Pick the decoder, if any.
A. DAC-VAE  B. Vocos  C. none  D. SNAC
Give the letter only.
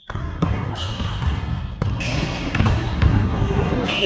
D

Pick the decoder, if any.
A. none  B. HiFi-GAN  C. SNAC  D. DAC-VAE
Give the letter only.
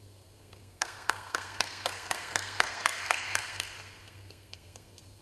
C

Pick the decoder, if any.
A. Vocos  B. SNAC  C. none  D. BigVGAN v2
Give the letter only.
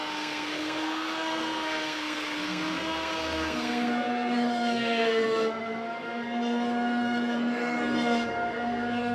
B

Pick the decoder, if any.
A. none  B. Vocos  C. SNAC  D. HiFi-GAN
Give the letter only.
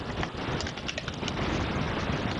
A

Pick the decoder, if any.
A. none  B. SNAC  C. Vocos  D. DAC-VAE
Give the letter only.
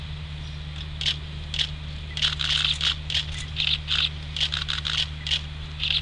A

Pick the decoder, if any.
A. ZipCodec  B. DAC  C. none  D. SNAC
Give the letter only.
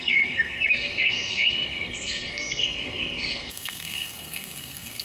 D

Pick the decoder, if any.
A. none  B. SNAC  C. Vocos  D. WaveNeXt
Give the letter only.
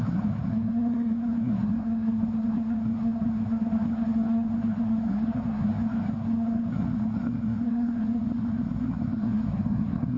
B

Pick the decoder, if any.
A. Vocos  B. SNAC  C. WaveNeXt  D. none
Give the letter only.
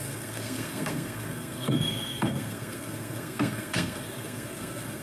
B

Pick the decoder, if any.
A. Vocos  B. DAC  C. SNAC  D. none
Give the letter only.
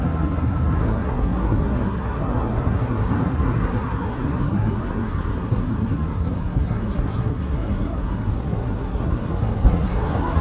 C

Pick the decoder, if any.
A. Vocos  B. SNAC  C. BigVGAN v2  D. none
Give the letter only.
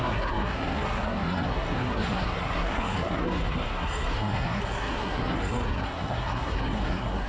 B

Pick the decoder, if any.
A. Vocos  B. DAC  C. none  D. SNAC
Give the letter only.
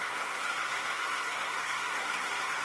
D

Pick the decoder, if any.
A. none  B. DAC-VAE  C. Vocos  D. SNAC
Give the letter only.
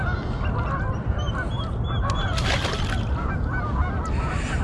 A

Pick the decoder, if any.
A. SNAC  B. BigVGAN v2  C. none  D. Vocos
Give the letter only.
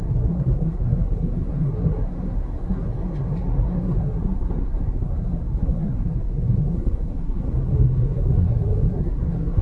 A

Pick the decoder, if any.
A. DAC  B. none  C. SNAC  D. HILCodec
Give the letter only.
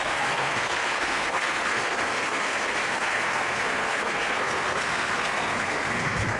C